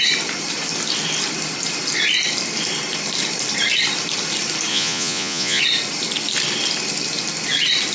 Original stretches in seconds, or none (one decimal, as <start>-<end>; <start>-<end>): 0.0-4.7; 5.6-7.9